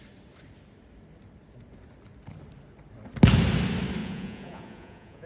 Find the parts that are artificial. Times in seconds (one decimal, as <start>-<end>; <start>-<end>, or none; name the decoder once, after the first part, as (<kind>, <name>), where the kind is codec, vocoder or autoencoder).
4.0-5.3 (vocoder, Vocos)